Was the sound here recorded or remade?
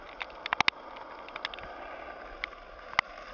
recorded